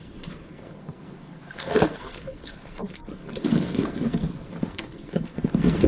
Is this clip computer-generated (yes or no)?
yes